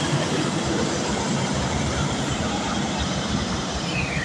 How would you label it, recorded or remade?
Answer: remade